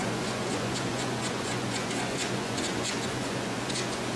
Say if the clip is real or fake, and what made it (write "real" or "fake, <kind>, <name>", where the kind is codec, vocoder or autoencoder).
fake, vocoder, Vocos